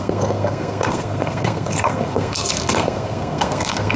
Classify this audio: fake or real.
fake